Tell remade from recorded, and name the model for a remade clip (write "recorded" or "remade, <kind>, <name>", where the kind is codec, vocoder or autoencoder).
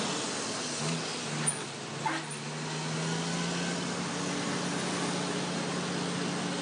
recorded